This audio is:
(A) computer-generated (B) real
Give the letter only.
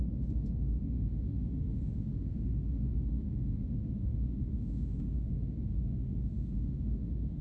A